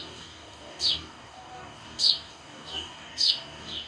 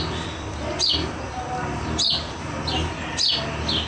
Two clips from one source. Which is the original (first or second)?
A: second